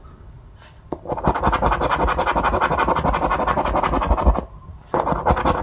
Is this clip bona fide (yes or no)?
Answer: yes